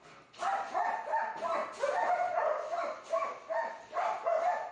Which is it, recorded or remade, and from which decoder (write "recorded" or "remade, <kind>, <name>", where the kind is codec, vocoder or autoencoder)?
recorded